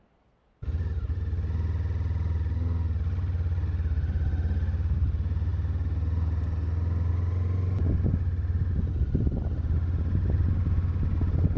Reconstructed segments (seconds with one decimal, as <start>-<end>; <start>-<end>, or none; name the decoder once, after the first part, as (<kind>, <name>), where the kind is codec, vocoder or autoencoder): none